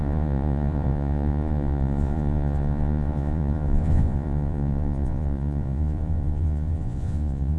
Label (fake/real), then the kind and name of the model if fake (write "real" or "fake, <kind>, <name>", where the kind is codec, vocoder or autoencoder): fake, vocoder, Vocos